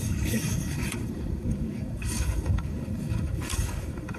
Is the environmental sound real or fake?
fake